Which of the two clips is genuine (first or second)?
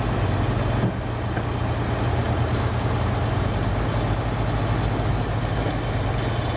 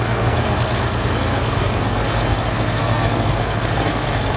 first